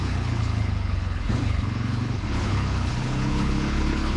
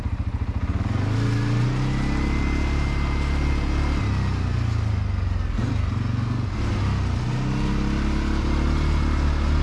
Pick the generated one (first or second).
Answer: first